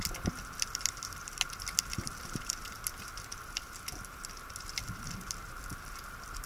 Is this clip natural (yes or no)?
no